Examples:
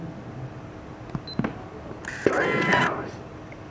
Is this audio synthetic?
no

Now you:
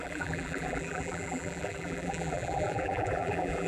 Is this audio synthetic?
yes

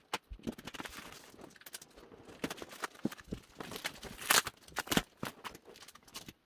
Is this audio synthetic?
no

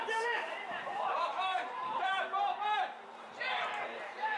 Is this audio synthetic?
yes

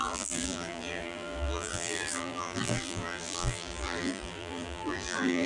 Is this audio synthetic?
yes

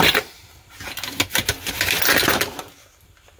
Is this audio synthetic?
no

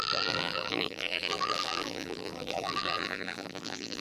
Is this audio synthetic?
yes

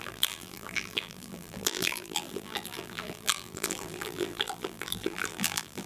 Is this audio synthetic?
yes